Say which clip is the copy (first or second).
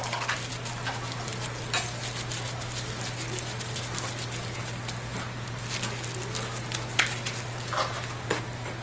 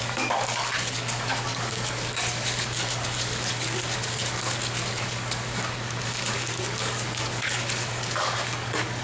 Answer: second